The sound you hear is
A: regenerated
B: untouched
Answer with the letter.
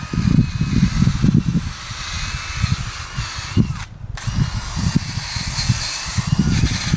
B